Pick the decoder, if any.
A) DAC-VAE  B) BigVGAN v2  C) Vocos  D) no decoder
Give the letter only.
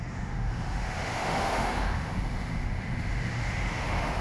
A